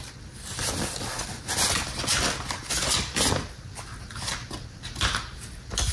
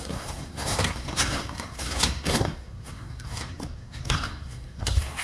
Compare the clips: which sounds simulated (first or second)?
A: second